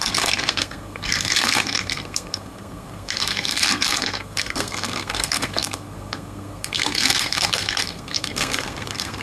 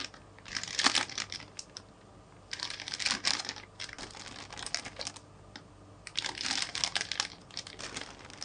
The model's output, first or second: first